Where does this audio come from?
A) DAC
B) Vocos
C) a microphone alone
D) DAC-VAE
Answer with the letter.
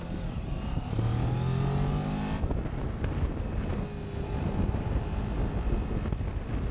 C